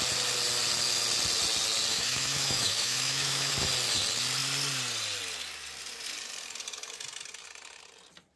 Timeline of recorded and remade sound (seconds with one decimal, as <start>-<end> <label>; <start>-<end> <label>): 0.0-1.9 recorded; 1.9-3.5 remade; 3.5-8.4 recorded